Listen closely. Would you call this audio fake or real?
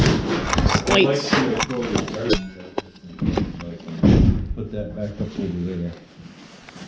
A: real